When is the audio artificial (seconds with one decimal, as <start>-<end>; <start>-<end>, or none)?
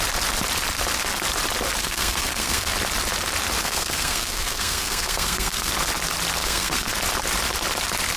1.8-2.7; 3.6-5.7; 6.4-6.9